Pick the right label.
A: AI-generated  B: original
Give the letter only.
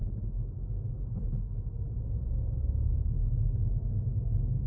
B